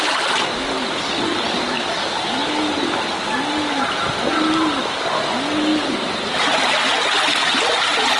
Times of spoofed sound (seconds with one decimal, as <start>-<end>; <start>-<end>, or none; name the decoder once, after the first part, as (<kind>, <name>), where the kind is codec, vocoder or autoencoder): none